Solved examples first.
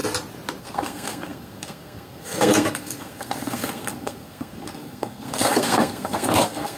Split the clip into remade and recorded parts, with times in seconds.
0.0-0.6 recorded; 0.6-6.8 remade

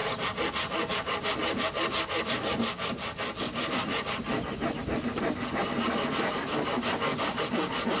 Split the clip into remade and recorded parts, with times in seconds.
0.0-8.0 recorded

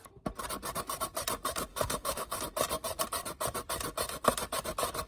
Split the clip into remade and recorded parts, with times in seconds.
0.0-1.7 recorded; 1.7-2.4 remade; 2.4-5.1 recorded

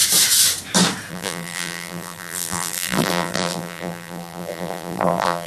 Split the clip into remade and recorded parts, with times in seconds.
0.0-1.1 recorded; 1.1-5.5 remade